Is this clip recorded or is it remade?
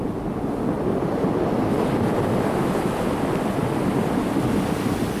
recorded